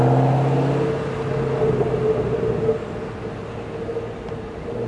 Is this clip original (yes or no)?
yes